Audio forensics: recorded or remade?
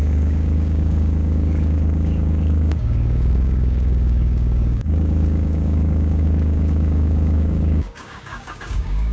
remade